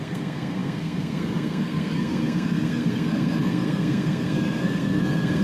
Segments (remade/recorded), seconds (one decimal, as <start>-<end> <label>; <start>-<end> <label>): 0.0-5.4 remade